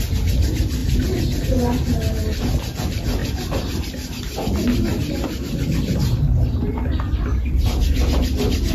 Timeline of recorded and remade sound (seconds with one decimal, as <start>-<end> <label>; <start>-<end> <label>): 0.0-8.7 recorded